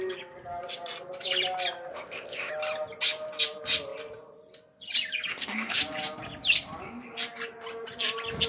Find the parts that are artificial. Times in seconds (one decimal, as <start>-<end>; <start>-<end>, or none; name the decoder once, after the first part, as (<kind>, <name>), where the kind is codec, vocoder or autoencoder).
1.9-2.5 (codec, ZipCodec); 5.3-5.8